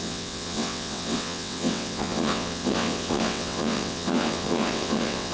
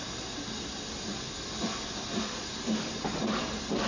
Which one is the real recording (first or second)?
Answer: second